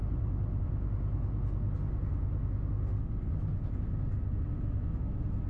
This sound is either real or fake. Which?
real